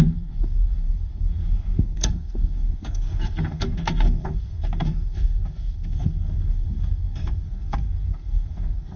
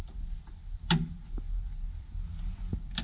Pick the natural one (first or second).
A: second